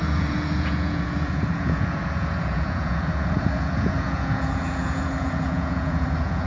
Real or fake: fake